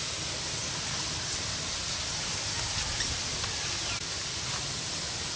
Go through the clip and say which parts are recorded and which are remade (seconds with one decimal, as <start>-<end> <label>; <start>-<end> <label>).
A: 0.0-5.4 recorded